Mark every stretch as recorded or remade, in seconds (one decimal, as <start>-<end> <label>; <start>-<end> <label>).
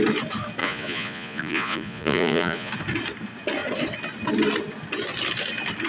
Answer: 0.0-0.6 recorded; 0.6-2.7 remade; 2.7-5.9 recorded